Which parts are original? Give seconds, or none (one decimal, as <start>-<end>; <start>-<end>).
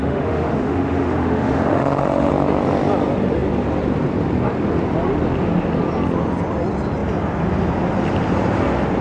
2.3-9.0